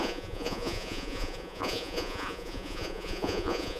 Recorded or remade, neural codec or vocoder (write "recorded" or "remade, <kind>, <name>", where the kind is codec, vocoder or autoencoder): remade, vocoder, Vocos